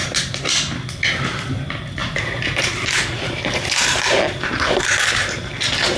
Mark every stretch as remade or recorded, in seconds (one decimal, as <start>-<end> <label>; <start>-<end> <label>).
0.0-2.0 recorded; 2.0-5.5 remade; 5.5-6.0 recorded